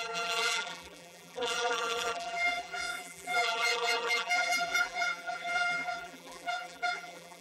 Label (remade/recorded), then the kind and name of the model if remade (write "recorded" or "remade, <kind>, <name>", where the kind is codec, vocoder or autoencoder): remade, vocoder, BigVGAN v2